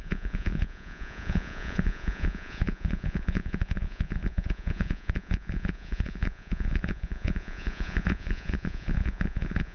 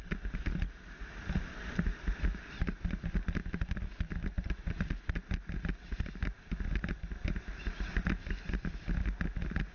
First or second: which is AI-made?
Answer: first